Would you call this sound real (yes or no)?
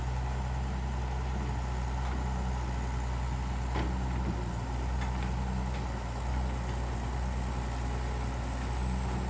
yes